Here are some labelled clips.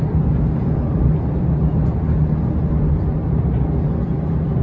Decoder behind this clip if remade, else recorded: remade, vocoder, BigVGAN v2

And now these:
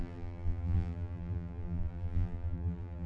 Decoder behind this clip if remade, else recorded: remade, vocoder, BigVGAN v2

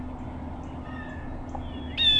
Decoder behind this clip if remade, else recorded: recorded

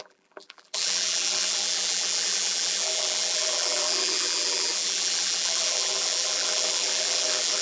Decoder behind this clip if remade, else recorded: remade, vocoder, BigVGAN v2